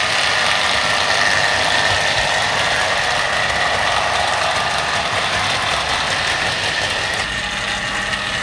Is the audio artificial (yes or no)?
no